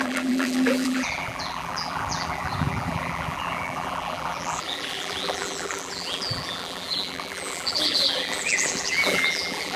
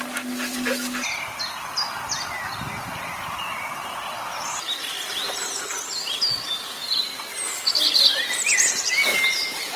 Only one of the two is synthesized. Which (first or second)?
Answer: first